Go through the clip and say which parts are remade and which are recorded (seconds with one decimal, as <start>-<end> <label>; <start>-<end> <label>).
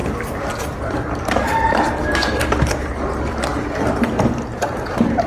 0.0-0.6 recorded; 0.6-5.3 remade